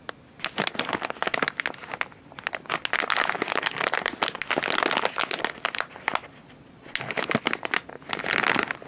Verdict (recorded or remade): recorded